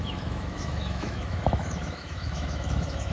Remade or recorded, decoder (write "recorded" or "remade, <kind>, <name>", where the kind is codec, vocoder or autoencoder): remade, autoencoder, DAC-VAE